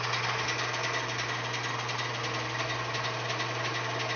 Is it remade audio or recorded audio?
recorded